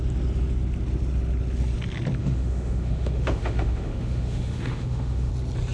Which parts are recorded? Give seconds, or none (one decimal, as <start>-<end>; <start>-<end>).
0.0-2.2; 5.3-5.7

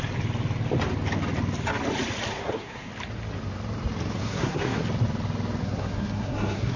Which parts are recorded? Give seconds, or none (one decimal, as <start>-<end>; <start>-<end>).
0.0-2.3; 2.9-4.2; 4.8-5.6